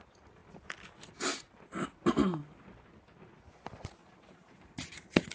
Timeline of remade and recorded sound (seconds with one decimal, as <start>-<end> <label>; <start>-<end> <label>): 0.0-4.0 recorded; 4.0-5.3 remade